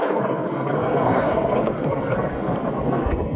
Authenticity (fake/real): fake